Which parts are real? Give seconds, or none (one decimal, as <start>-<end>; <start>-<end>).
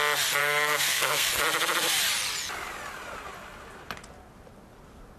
0.0-0.4; 1.3-5.2